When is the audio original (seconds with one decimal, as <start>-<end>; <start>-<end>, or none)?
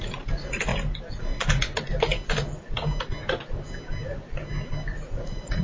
0.7-1.2; 1.7-5.0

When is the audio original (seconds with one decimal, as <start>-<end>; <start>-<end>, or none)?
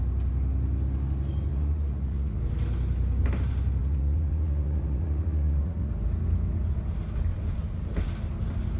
0.0-1.5; 2.4-3.8; 5.9-8.8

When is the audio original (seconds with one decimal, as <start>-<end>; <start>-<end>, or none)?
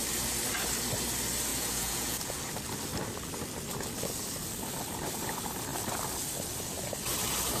0.0-1.5; 2.4-7.6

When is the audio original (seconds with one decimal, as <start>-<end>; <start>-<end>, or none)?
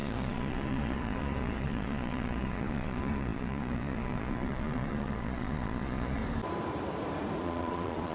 6.2-7.4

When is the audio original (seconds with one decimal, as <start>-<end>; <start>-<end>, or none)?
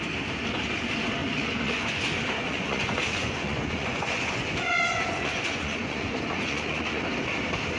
0.0-1.2; 2.0-2.4; 7.0-7.8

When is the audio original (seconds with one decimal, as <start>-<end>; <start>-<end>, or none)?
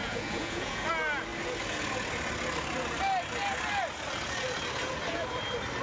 0.9-5.8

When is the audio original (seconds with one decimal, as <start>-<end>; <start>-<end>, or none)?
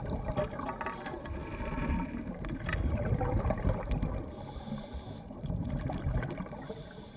0.0-7.2